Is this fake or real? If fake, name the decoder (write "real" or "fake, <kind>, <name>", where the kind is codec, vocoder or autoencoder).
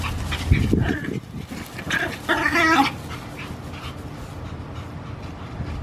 real